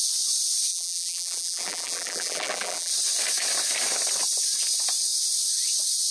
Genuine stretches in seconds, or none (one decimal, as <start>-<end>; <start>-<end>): 0.0-0.7; 2.9-6.1